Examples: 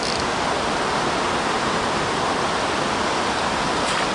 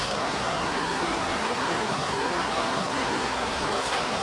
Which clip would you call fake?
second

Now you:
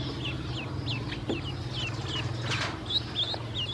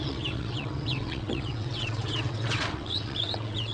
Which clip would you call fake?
second